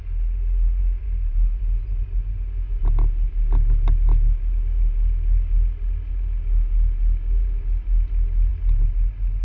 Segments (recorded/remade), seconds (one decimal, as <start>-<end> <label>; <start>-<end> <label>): 0.0-9.4 recorded

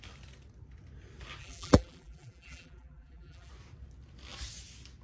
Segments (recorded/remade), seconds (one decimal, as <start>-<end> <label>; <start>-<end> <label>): 0.0-1.4 recorded; 1.4-3.5 remade; 3.5-5.0 recorded

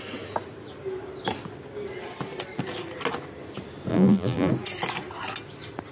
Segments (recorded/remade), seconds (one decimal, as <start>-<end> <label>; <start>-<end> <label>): 0.0-3.9 recorded; 3.9-4.5 remade; 4.5-5.9 recorded

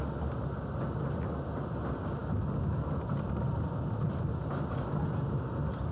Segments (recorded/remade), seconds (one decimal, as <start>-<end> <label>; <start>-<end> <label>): 0.0-5.9 recorded

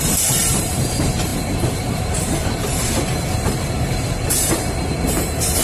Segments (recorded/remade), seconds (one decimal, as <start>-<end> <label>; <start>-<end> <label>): 0.0-5.6 remade

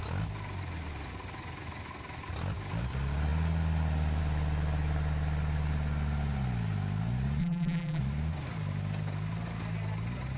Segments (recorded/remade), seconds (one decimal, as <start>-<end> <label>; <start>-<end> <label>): 0.0-7.4 recorded; 7.4-8.0 remade; 8.0-10.4 recorded

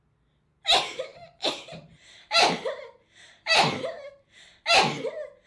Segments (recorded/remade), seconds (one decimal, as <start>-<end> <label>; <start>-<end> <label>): 0.0-1.1 recorded; 1.1-4.1 remade; 4.1-5.5 recorded